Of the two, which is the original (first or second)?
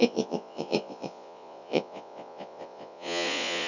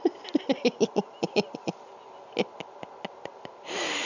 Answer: second